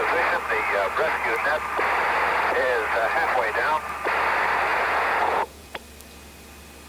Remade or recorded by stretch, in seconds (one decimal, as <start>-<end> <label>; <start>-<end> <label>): 0.0-4.7 recorded; 4.7-5.8 remade; 5.8-6.9 recorded